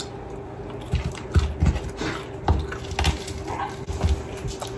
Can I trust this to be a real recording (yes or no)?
yes